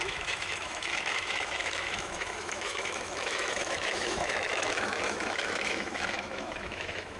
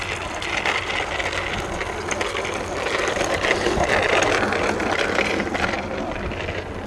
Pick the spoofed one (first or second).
first